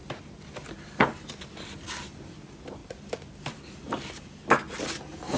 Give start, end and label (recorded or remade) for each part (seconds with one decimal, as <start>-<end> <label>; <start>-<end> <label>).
0.0-5.4 recorded